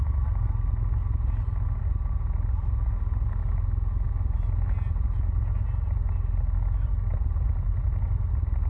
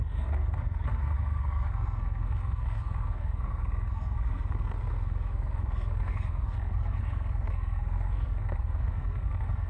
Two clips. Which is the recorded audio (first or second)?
first